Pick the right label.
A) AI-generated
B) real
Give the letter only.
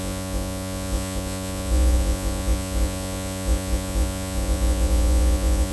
A